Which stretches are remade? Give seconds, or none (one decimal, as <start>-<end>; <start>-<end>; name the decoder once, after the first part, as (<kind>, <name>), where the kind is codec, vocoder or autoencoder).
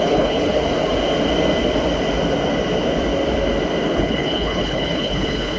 0.0-0.5 (codec, HILCodec); 3.9-5.6